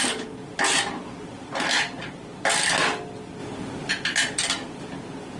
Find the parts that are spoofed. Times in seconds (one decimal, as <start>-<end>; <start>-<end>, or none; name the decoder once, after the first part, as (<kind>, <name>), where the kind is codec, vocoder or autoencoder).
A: none